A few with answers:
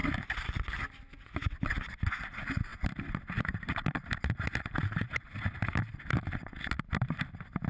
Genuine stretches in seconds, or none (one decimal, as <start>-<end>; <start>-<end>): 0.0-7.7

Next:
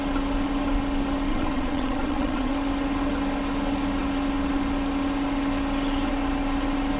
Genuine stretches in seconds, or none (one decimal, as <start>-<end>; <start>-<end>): 0.0-1.3; 2.5-7.0

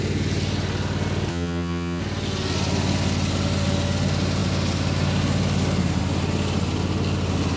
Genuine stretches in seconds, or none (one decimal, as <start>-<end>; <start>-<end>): 0.0-1.3; 2.0-7.6

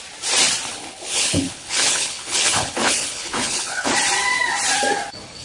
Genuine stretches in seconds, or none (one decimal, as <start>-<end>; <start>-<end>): 0.0-0.7; 3.9-5.4

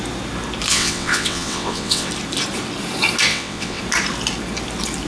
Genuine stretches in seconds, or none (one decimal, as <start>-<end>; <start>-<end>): 0.0-0.7; 2.1-3.3; 3.8-5.1

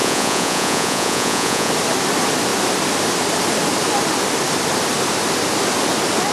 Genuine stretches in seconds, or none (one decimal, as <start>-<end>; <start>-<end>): 1.7-6.3